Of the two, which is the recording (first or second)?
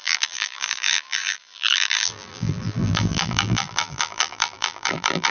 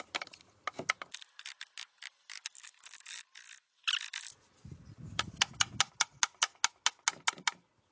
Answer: second